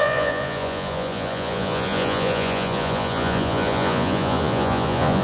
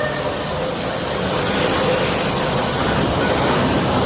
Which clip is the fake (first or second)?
first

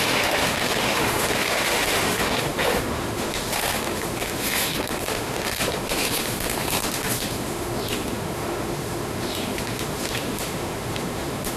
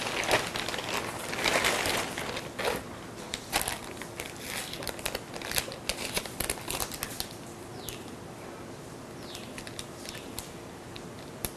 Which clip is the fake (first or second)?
first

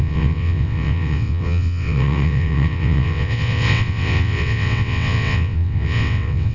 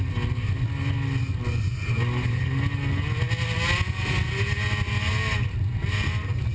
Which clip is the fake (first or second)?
first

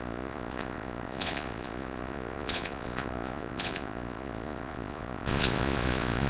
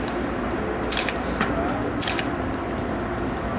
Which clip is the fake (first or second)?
first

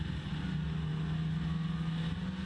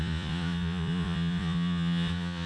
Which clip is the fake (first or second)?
second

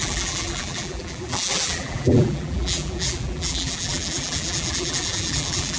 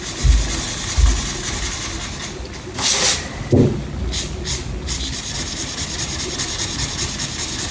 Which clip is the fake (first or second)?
first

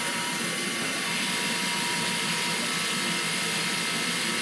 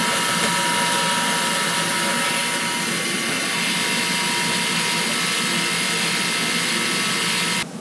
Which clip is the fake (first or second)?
first